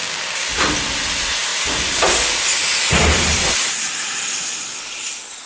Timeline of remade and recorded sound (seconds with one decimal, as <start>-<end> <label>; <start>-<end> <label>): 0.0-0.5 remade; 0.5-5.5 recorded